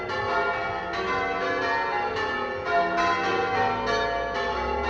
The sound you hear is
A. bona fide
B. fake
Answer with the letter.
A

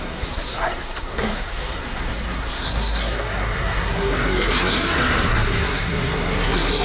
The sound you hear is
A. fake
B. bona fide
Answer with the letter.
A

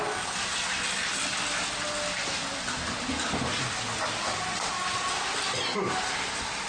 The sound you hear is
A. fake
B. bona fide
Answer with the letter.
B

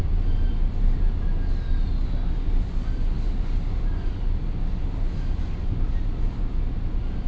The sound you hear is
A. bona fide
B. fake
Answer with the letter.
A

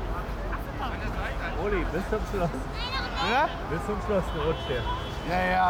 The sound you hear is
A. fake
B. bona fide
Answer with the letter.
B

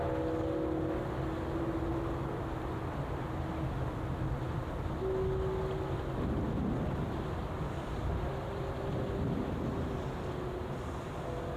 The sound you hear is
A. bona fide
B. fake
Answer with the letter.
A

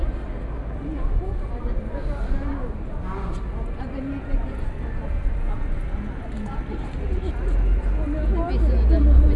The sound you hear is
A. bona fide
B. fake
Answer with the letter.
A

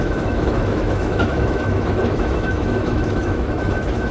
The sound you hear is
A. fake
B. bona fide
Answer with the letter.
A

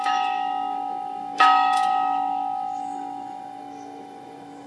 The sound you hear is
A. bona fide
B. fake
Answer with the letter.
B